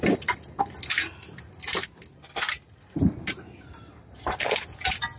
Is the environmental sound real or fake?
real